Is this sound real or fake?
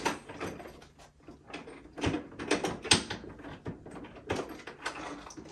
real